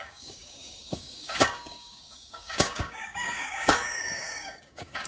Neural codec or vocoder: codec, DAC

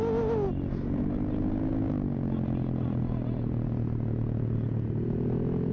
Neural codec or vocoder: none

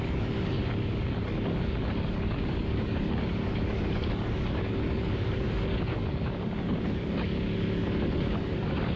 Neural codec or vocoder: codec, DAC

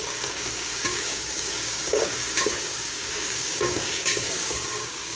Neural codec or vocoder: codec, DAC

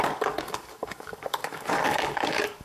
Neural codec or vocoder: codec, DAC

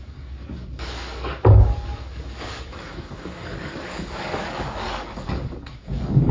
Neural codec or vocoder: codec, DAC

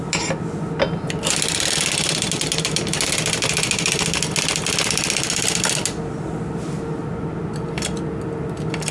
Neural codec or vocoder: none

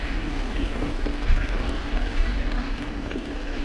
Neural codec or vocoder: codec, DAC